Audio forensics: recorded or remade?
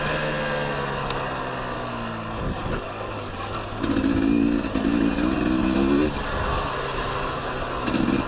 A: recorded